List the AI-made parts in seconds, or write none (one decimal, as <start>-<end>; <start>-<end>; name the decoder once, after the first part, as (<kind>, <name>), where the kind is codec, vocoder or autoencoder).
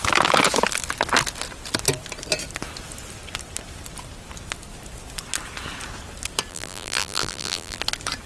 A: 6.5-7.8 (vocoder, BigVGAN v2)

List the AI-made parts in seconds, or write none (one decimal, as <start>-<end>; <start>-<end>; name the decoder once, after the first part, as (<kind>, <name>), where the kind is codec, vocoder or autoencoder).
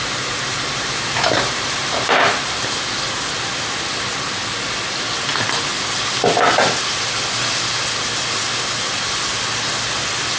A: 0.0-2.2 (vocoder, BigVGAN v2)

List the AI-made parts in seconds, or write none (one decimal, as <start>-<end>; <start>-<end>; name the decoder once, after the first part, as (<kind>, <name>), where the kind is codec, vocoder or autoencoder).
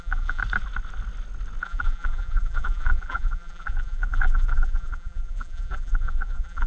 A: 0.0-0.4 (vocoder, BigVGAN v2); 1.6-6.7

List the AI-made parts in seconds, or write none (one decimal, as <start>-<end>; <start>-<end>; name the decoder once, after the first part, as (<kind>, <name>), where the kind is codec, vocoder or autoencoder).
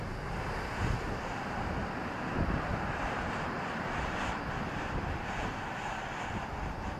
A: 2.7-5.5 (vocoder, BigVGAN v2)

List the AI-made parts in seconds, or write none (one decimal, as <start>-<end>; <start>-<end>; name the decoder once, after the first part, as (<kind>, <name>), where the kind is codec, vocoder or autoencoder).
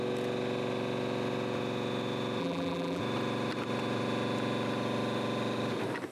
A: 2.4-3.0 (vocoder, BigVGAN v2)